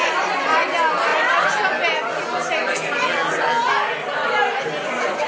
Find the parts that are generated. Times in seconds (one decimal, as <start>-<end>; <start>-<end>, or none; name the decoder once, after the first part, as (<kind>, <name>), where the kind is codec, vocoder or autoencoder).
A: none